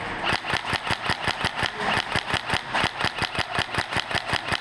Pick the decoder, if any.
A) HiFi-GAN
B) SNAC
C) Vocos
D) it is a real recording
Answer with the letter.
D